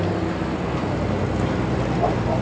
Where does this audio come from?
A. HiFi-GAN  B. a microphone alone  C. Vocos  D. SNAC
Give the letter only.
B